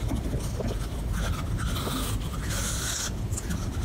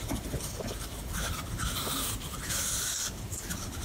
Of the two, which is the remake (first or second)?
second